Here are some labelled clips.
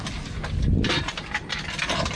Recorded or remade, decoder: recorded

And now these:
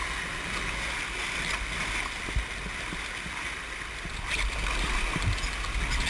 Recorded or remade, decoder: recorded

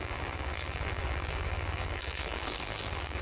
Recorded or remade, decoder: remade, vocoder, BigVGAN v2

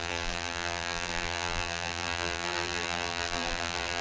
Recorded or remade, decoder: remade, vocoder, BigVGAN v2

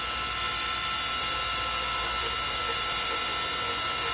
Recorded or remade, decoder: recorded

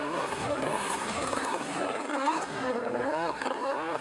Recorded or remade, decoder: remade, codec, SNAC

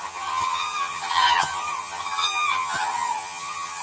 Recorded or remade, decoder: remade, vocoder, HiFi-GAN